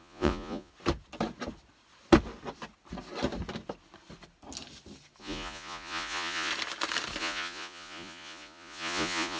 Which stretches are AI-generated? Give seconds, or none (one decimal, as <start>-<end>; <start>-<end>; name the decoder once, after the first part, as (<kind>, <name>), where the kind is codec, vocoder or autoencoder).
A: 0.0-0.7 (vocoder, Vocos); 5.2-6.5; 7.2-9.4